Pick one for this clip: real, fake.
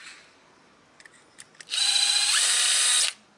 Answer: real